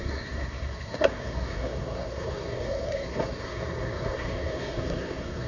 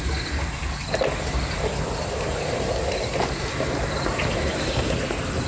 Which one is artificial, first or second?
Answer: first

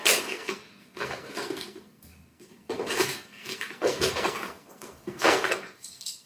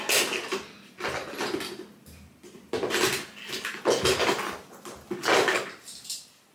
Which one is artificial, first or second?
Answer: first